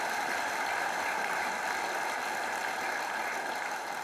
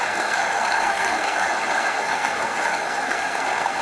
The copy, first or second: second